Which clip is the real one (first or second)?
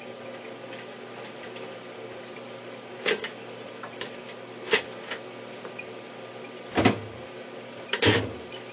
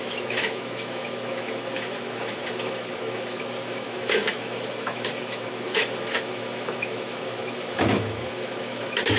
first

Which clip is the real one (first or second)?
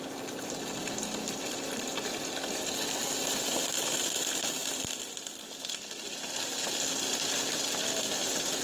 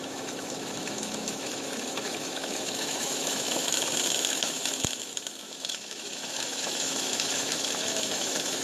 first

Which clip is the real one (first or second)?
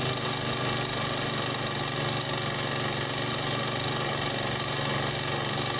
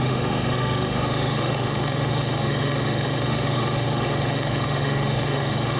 first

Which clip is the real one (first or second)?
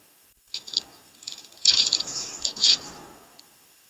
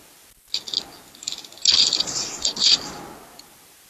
second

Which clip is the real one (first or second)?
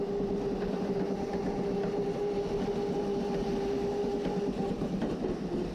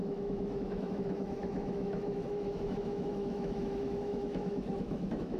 first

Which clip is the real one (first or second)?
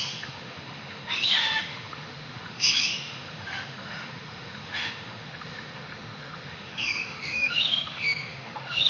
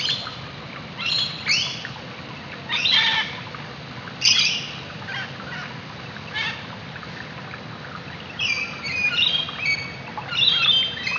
second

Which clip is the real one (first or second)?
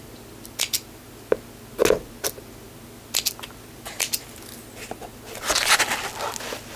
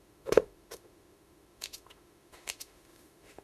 first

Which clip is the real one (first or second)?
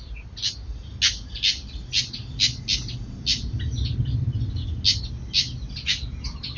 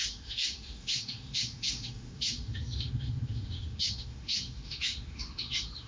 first